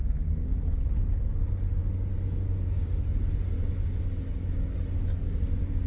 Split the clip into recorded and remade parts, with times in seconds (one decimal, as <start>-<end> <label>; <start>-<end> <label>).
0.0-5.9 recorded